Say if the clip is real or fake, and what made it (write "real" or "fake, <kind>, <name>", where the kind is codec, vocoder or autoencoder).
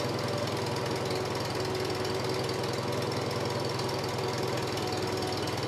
real